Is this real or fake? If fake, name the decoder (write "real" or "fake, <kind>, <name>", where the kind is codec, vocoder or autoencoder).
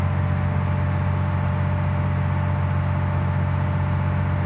real